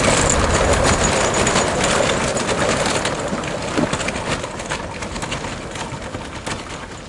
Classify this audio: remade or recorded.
recorded